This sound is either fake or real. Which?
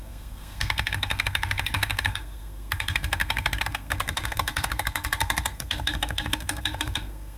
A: fake